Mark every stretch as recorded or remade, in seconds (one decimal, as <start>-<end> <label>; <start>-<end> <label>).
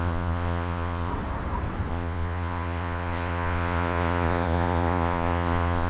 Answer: 0.0-1.1 remade; 1.1-1.9 recorded; 1.9-5.9 remade